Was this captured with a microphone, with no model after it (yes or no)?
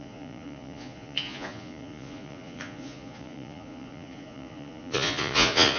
no